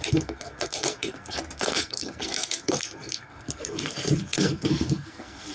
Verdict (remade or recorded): remade